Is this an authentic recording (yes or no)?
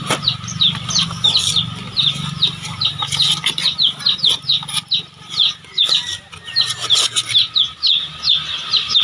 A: yes